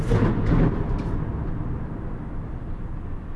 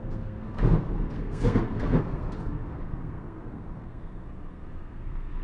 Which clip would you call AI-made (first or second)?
second